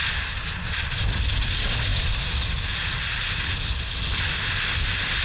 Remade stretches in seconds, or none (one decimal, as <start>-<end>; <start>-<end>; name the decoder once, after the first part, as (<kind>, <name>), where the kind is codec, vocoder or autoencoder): none